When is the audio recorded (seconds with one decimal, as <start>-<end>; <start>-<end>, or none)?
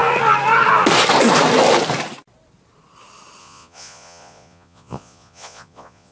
0.0-3.4